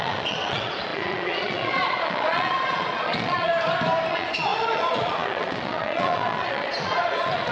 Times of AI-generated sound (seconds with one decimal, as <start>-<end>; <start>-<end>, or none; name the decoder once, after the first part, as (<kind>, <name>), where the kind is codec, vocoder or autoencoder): 0.0-3.5 (vocoder, Vocos); 4.1-7.5